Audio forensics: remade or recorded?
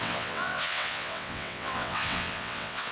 remade